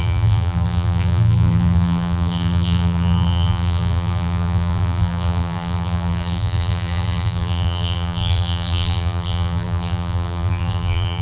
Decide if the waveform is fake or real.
fake